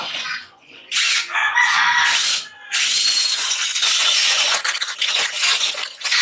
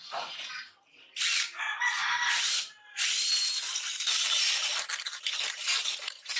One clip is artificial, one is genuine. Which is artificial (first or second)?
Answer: first